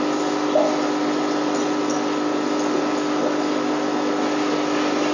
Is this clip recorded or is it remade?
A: recorded